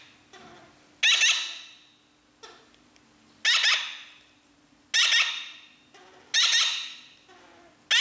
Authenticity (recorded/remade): recorded